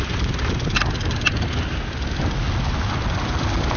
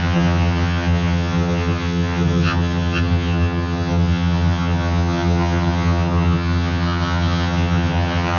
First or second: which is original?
first